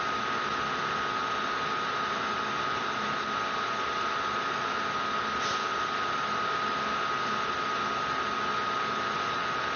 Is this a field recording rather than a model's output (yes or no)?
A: yes